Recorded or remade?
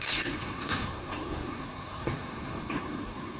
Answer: remade